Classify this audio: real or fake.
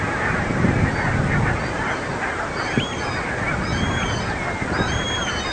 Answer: real